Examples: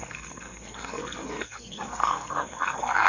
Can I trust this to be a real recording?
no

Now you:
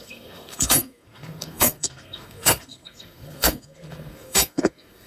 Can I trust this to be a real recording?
no